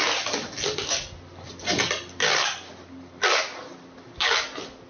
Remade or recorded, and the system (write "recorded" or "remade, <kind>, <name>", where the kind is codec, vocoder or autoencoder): recorded